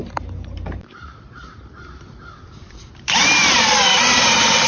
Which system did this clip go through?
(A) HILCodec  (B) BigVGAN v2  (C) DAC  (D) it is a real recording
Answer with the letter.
B